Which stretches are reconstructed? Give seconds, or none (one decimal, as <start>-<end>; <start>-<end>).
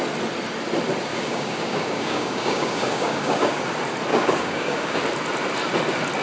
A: 1.1-3.6; 4.1-5.0